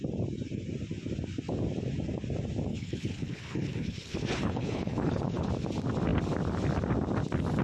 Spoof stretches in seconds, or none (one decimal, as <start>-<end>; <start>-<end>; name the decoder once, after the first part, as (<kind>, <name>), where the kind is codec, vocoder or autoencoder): 2.7-5.5 (codec, HILCodec)